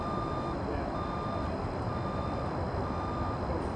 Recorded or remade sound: recorded